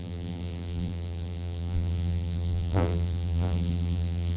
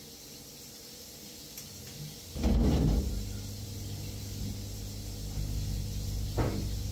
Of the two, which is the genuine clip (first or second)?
second